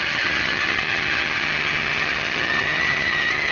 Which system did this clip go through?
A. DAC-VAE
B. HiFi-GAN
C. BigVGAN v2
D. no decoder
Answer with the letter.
B